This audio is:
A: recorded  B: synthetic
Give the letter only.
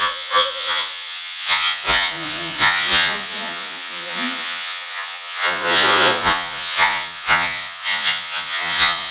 B